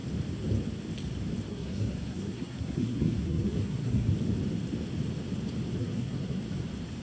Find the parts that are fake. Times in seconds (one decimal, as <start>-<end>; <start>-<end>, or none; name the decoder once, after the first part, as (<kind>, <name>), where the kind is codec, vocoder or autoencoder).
1.5-4.1 (codec, SNAC); 5.8-6.4